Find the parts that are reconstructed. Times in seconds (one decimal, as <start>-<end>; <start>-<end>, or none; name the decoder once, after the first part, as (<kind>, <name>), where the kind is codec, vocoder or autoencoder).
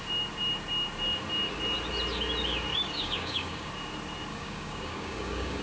2.7-3.7 (codec, DAC); 4.3-5.6